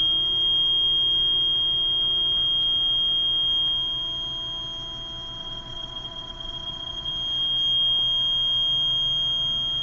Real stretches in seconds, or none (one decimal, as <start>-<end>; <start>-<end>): 0.0-5.4; 7.1-9.8